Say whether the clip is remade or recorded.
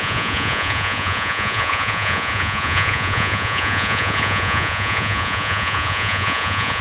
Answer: remade